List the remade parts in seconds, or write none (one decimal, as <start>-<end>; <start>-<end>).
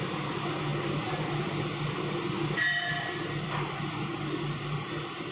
none